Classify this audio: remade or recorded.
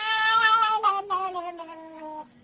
remade